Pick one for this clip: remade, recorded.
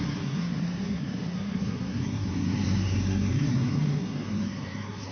remade